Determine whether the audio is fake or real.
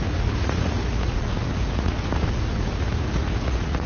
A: fake